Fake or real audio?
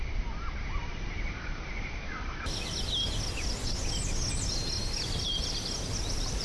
real